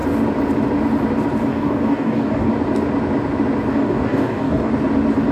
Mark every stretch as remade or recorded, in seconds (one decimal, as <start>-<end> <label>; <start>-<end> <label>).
0.0-1.5 recorded; 1.5-2.5 remade; 2.5-3.7 recorded; 3.7-4.7 remade; 4.7-5.3 recorded